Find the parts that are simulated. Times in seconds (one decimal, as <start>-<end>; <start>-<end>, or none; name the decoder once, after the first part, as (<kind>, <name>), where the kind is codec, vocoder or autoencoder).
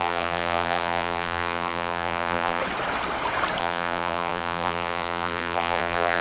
0.0-2.6 (vocoder, BigVGAN v2); 3.6-6.2